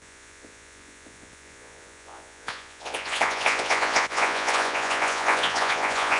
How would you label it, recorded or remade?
remade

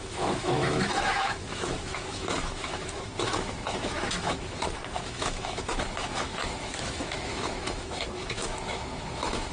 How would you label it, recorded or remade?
remade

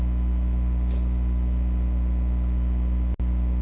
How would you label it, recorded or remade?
recorded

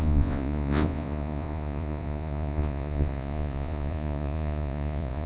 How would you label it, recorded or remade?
remade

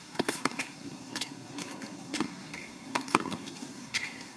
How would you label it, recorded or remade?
remade